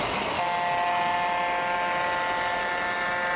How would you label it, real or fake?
real